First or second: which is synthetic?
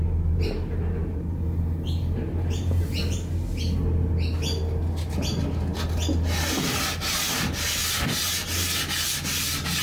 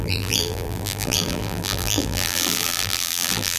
second